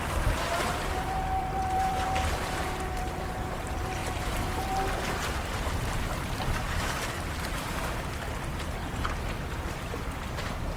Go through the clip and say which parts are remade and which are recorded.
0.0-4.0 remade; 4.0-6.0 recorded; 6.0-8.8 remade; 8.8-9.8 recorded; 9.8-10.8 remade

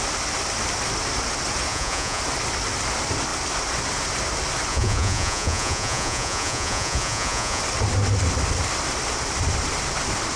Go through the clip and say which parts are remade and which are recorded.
0.0-1.7 recorded; 1.7-2.2 remade; 2.2-4.7 recorded; 4.7-7.6 remade; 7.6-10.4 recorded

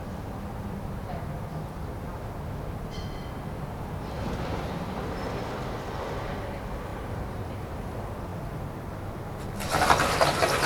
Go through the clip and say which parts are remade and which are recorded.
0.0-6.9 recorded; 6.9-7.9 remade; 7.9-10.7 recorded

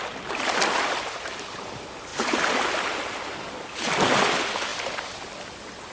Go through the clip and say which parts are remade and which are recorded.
0.0-5.9 recorded

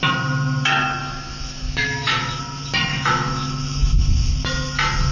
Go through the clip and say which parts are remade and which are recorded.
0.0-1.0 recorded; 1.0-2.4 remade; 2.4-2.9 recorded; 2.9-4.3 remade; 4.3-5.1 recorded

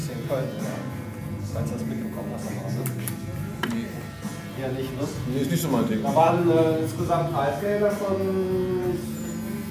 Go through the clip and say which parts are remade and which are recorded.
0.0-3.7 remade; 3.7-9.7 recorded

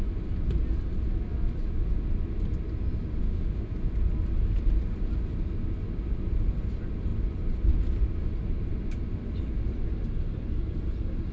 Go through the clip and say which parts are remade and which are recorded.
0.0-3.2 recorded; 3.2-3.7 remade; 3.7-11.3 recorded